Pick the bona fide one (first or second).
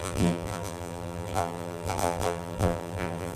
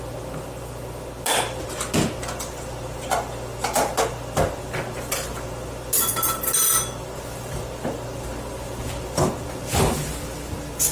second